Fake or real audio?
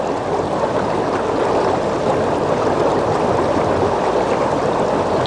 fake